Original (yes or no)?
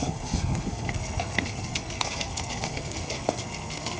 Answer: no